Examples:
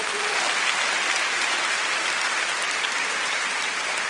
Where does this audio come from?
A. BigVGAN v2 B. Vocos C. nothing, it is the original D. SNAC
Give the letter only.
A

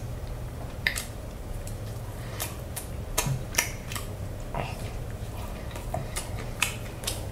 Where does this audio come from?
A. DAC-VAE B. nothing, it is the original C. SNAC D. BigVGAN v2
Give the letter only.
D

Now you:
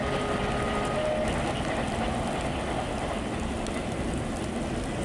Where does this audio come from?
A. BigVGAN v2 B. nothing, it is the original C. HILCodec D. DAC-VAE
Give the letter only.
B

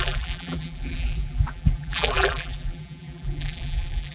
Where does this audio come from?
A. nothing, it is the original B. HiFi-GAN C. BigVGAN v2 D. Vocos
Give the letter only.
C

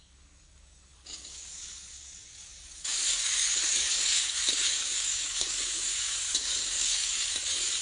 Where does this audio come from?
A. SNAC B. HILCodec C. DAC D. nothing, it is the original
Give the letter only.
C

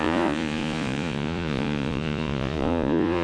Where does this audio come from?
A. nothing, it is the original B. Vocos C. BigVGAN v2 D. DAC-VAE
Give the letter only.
B